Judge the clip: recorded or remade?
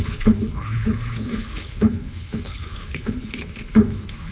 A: remade